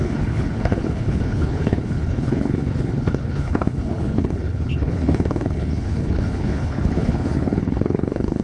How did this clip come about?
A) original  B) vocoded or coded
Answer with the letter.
B